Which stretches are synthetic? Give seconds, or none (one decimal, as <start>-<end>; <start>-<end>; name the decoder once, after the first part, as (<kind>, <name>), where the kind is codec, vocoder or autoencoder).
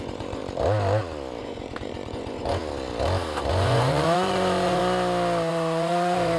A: 0.0-0.4 (vocoder, Vocos); 1.4-2.6; 3.5-4.8; 5.5-6.4